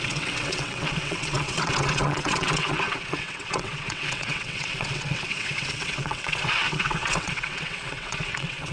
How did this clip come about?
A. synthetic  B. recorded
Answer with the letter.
A